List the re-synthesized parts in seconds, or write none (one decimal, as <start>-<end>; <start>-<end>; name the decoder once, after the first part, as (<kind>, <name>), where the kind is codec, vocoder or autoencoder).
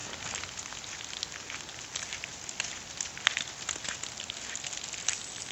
none